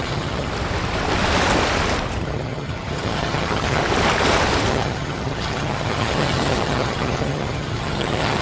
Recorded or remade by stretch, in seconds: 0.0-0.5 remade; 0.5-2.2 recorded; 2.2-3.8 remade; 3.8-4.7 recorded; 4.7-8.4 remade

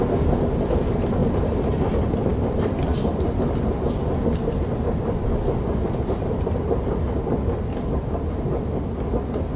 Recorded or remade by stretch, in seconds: 0.0-9.6 recorded

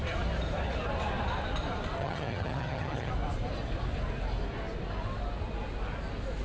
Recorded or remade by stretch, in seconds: 0.0-2.0 recorded; 2.0-3.1 remade; 3.1-6.4 recorded

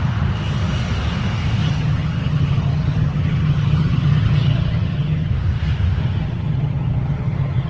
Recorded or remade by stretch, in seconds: 0.0-1.6 recorded; 1.6-5.3 remade; 5.3-6.0 recorded; 6.0-7.7 remade

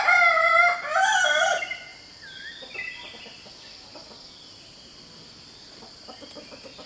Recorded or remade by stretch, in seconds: 0.0-6.9 recorded

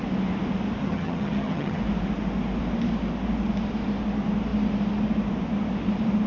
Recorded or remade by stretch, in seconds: 0.0-0.8 recorded; 0.8-1.8 remade; 1.8-6.3 recorded